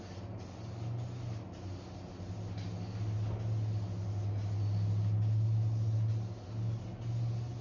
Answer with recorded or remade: recorded